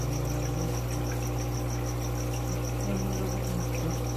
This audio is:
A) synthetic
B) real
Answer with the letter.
B